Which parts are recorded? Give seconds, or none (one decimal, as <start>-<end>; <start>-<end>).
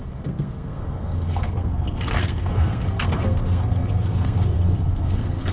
none